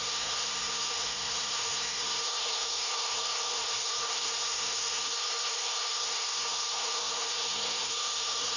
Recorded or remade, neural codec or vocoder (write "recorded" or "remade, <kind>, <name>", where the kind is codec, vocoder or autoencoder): remade, codec, SNAC